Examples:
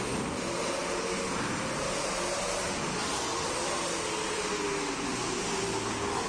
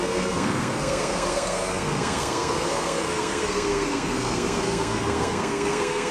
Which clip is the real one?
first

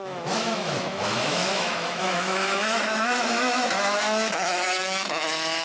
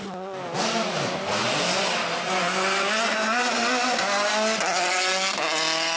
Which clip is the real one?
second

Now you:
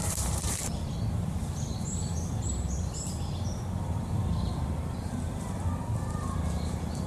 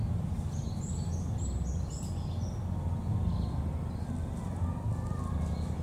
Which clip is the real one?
second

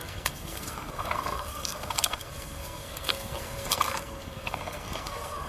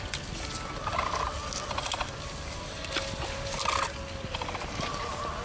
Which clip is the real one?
second